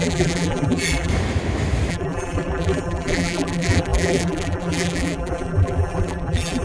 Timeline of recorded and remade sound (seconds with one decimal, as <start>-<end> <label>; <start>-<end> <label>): 0.0-1.1 remade; 1.1-1.9 recorded; 1.9-6.6 remade